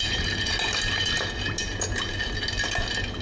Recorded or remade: recorded